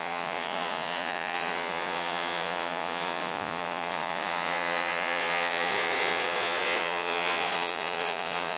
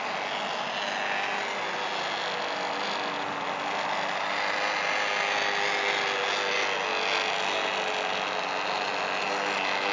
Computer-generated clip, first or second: first